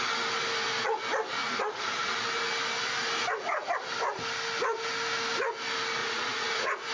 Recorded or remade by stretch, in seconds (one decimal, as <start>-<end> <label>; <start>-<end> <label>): 0.0-1.4 recorded; 1.4-2.1 remade; 2.1-3.2 recorded; 3.2-3.7 remade; 3.7-6.0 recorded; 6.0-6.9 remade